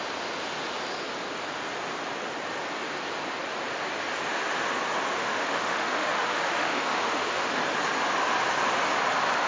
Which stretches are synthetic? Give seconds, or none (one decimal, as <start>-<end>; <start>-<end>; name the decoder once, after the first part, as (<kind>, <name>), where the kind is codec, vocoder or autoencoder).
5.2-7.6 (autoencoder, DAC-VAE)